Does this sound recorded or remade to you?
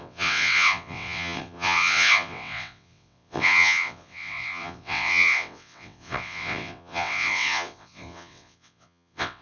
remade